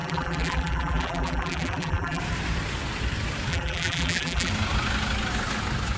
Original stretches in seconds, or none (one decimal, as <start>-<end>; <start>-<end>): 2.2-3.5; 4.5-6.0